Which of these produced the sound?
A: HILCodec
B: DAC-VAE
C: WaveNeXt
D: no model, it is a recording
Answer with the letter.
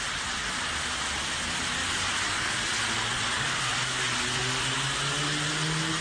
D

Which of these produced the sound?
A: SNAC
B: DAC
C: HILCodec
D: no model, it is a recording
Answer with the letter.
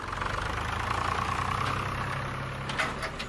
D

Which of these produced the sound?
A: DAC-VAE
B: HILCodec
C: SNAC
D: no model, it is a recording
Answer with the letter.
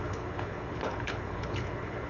B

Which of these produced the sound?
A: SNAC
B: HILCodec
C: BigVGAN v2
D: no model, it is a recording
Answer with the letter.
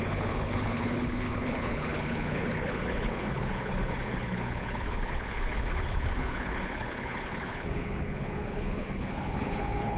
B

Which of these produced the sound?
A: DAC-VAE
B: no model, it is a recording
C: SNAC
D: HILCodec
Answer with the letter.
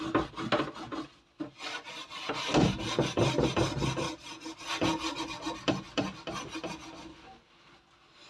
B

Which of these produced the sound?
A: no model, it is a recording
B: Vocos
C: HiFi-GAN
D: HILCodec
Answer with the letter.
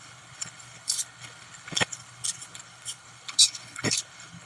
D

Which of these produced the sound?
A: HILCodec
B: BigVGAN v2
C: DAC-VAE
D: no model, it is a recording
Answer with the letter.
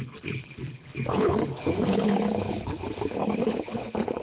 A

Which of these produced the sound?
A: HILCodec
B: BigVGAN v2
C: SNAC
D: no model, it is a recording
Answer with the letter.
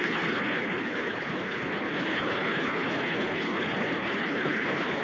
A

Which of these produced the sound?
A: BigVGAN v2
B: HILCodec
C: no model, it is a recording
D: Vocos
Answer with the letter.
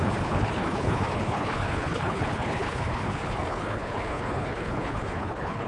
B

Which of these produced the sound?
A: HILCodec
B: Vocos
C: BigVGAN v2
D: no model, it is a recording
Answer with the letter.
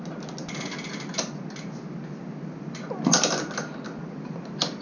D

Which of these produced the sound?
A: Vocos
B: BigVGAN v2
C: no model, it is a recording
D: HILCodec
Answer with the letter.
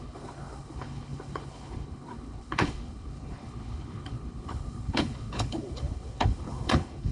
D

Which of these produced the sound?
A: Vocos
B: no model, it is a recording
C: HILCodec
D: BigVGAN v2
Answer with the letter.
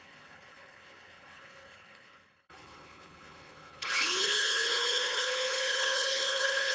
C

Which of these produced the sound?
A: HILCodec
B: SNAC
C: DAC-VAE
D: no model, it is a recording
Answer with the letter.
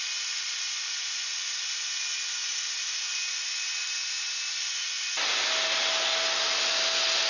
D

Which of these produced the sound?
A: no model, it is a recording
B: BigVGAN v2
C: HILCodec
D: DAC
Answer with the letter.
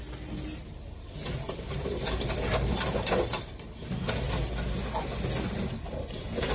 A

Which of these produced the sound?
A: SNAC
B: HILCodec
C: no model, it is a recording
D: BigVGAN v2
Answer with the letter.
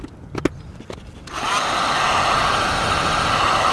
C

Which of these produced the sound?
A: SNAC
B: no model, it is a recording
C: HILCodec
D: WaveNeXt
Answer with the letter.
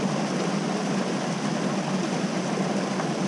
B